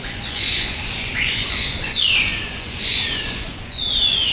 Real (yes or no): no